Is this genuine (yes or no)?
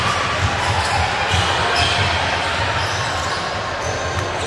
yes